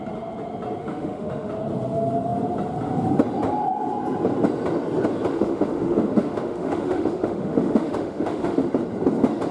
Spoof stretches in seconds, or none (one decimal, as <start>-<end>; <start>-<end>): 0.8-1.5; 5.3-8.7